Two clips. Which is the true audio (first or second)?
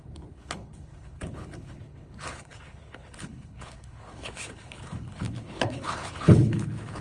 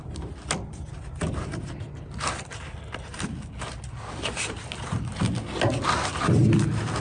second